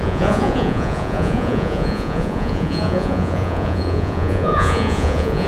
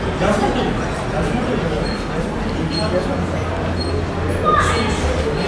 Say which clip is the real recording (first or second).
second